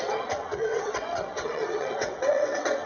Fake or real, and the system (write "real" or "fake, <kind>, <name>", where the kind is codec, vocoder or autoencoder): fake, vocoder, WaveNeXt